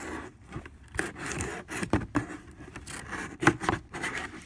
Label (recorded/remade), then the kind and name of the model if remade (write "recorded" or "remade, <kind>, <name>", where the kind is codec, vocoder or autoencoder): recorded